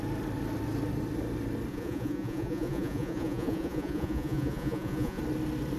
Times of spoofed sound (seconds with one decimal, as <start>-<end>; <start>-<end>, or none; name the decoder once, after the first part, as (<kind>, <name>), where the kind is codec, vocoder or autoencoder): 1.7-5.2 (vocoder, Vocos)